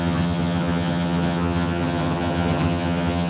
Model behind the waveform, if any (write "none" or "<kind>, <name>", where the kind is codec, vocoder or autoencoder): vocoder, HiFi-GAN